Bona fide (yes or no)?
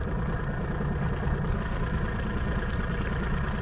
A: yes